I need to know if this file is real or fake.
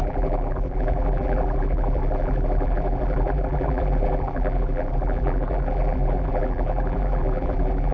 fake